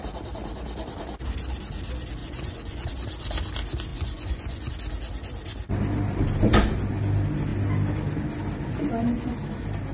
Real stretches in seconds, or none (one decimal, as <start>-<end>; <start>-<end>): 0.0-2.2; 2.9-3.9; 4.7-9.9